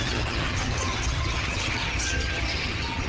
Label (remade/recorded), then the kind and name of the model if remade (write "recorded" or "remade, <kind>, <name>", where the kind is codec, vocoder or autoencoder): remade, vocoder, HiFi-GAN